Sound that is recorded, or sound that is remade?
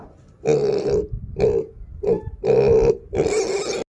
recorded